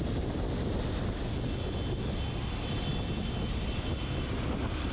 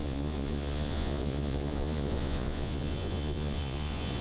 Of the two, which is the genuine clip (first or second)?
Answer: first